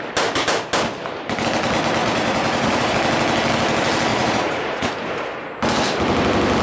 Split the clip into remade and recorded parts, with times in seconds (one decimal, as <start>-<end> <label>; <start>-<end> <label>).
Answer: 0.0-2.0 recorded; 2.0-2.9 remade; 2.9-4.1 recorded; 4.1-4.9 remade; 4.9-6.6 recorded

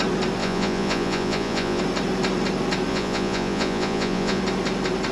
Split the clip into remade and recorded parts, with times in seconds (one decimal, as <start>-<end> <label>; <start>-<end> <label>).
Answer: 0.0-0.4 recorded; 0.4-1.8 remade; 1.8-2.9 recorded; 2.9-4.4 remade; 4.4-5.1 recorded

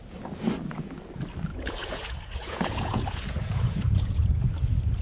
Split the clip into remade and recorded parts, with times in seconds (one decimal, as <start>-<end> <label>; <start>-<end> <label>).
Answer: 0.0-1.5 recorded; 1.5-4.5 remade; 4.5-5.0 recorded